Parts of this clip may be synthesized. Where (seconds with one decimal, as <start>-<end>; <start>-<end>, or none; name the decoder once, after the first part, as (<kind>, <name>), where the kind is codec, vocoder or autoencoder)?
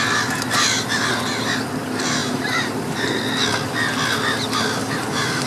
2.2-3.2 (vocoder, BigVGAN v2); 4.8-5.5